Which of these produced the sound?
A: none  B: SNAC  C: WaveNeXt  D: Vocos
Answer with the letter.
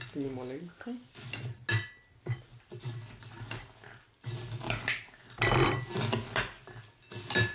A